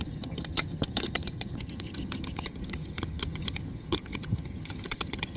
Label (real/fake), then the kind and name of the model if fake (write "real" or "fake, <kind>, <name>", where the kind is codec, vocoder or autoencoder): fake, vocoder, HiFi-GAN